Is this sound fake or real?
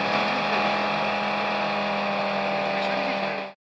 real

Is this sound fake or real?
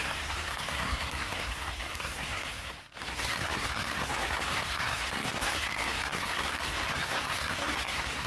fake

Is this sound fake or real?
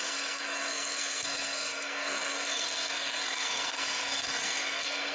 fake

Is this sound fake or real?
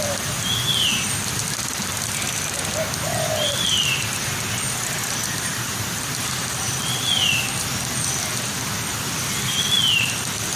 real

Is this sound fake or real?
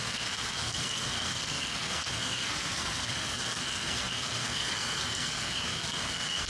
fake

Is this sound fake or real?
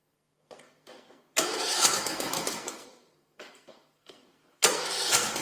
fake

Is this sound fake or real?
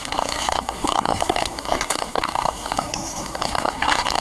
fake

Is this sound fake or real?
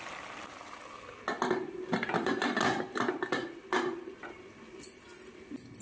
real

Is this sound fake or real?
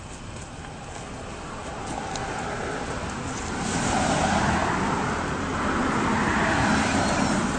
real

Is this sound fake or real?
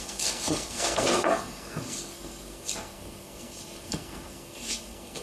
fake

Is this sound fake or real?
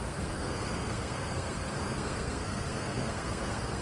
fake